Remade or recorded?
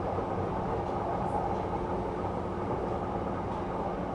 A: recorded